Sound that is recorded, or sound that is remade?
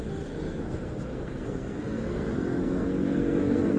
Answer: remade